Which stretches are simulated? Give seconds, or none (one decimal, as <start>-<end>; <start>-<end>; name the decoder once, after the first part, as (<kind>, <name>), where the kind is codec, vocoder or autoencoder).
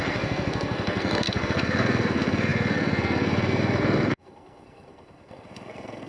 0.0-6.1 (codec, SNAC)